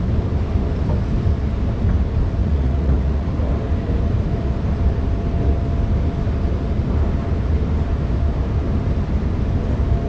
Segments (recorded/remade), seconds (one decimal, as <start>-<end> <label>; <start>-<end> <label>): 0.0-2.4 recorded; 2.4-3.3 remade; 3.3-10.1 recorded